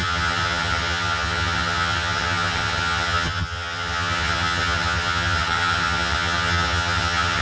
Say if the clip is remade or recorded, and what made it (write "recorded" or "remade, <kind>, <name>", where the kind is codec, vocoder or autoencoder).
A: remade, vocoder, HiFi-GAN